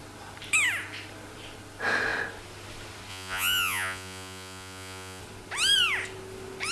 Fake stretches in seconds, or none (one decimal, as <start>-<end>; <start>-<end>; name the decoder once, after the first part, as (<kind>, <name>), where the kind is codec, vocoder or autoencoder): 3.1-5.2 (vocoder, Vocos)